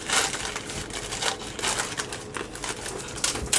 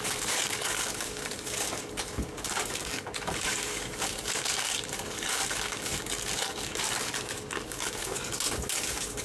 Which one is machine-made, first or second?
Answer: second